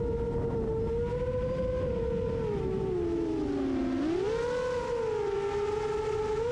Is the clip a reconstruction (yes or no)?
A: no